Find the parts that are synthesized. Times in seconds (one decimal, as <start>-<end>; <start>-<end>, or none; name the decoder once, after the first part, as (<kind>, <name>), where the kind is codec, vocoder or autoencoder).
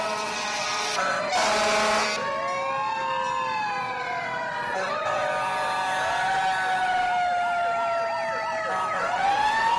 0.0-1.3 (vocoder, WaveNeXt); 3.8-5.3; 8.9-9.8